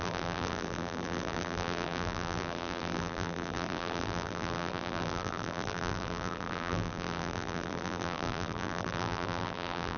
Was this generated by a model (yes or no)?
yes